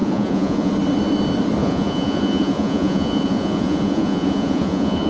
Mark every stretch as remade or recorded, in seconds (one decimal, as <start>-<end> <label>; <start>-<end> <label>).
0.0-0.7 remade; 0.7-1.6 recorded; 1.6-5.1 remade